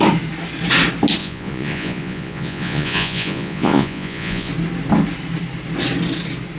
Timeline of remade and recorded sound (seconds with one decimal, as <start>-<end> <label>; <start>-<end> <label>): 0.0-1.2 recorded; 1.2-4.5 remade; 4.5-6.6 recorded